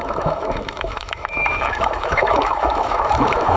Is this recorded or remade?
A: remade